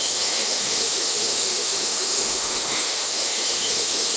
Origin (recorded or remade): remade